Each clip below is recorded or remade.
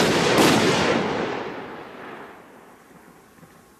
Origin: recorded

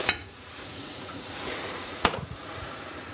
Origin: remade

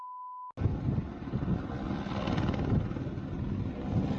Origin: recorded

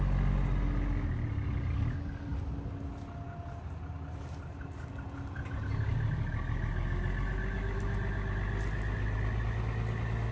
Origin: recorded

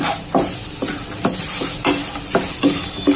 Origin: recorded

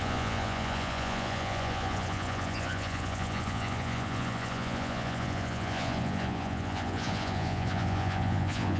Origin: remade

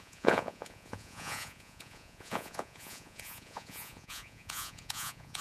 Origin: remade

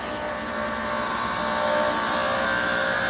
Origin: recorded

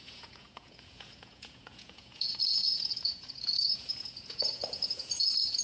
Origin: remade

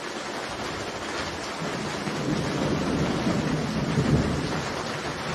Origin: recorded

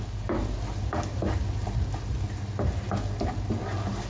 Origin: recorded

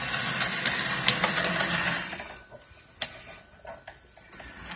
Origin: recorded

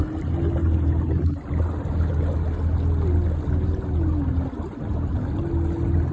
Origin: recorded